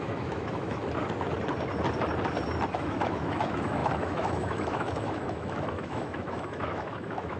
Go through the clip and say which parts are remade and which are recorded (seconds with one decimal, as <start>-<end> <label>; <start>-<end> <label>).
0.0-0.8 remade; 0.8-2.7 recorded; 2.7-7.4 remade